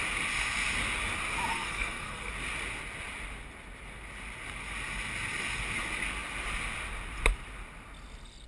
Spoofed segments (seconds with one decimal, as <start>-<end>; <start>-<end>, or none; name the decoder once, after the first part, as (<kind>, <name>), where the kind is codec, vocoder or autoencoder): 1.5-2.3 (codec, SNAC)

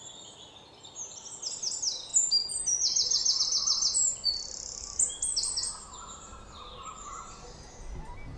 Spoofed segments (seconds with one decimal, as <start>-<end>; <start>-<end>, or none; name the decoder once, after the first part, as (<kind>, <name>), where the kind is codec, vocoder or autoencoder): none

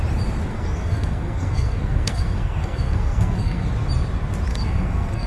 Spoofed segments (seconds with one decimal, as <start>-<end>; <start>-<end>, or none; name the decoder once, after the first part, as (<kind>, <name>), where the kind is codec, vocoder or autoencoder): 0.5-3.7 (codec, SNAC); 4.5-5.3

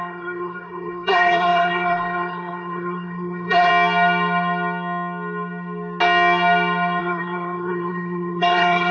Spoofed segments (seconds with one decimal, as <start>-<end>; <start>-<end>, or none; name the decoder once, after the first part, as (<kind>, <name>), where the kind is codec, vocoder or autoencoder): 0.0-3.7 (codec, SNAC); 7.0-8.9

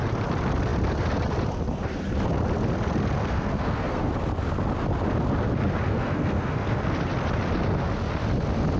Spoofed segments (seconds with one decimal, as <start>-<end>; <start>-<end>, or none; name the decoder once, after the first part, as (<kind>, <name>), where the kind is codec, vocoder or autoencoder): 3.2-4.1 (codec, SNAC); 5.9-6.8

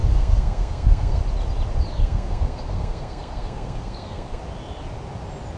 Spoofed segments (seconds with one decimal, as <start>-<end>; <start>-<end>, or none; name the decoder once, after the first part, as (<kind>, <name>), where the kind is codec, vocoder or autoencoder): 0.0-1.2 (codec, SNAC); 1.9-4.4

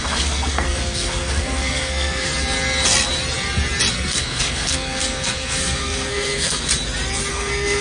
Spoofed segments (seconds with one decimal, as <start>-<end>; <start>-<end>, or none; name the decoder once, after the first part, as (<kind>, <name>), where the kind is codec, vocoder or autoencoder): 0.0-2.3 (codec, SNAC); 3.9-6.7; 7.3-7.8

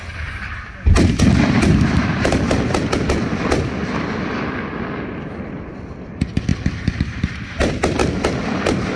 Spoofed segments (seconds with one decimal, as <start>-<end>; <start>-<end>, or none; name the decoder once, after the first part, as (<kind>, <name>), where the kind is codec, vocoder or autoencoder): none